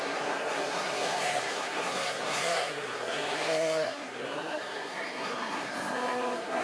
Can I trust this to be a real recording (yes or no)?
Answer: no